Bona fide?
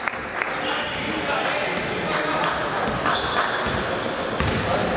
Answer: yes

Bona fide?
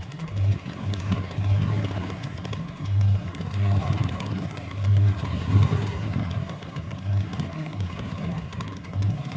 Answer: no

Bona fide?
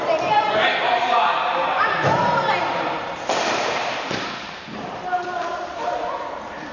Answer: no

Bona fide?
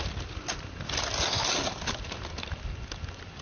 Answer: yes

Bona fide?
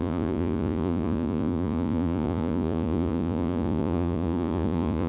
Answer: no